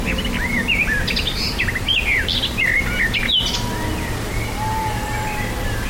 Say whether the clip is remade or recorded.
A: recorded